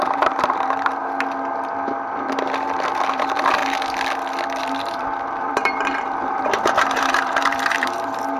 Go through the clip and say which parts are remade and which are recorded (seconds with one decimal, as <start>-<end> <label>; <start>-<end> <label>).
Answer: 0.0-1.0 remade; 1.0-3.1 recorded; 3.1-3.6 remade; 3.6-4.7 recorded; 4.7-8.4 remade